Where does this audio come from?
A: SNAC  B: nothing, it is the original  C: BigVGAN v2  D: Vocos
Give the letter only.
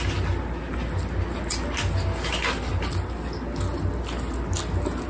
B